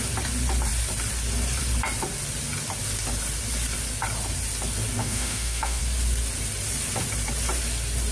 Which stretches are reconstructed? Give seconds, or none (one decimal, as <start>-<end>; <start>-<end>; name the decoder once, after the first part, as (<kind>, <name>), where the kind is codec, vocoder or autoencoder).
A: 5.0-5.8 (autoencoder, DAC-VAE)

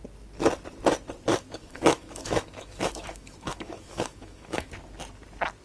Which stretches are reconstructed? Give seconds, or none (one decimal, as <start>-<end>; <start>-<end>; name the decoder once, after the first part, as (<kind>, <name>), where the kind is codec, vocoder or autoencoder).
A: 1.3-4.7 (autoencoder, DAC-VAE)

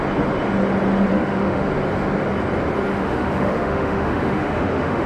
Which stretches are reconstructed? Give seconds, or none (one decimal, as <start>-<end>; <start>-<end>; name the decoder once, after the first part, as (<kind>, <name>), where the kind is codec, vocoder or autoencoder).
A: 1.1-1.7 (autoencoder, DAC-VAE); 2.9-5.1

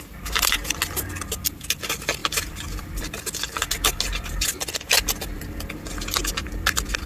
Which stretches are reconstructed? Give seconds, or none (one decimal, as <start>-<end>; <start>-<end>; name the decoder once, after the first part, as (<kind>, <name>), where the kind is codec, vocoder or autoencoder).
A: none

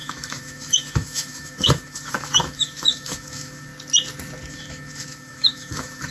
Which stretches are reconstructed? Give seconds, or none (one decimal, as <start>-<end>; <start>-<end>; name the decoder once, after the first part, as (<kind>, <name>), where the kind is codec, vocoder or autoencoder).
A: 0.0-3.7 (autoencoder, DAC-VAE); 4.5-6.1

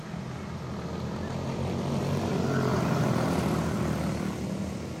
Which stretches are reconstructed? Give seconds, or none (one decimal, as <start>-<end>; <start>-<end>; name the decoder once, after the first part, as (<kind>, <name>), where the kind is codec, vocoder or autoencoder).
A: none

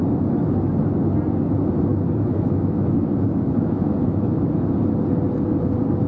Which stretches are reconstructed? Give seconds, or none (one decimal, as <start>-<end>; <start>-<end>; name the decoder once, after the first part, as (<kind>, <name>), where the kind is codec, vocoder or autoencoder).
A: 1.9-4.6 (autoencoder, DAC-VAE)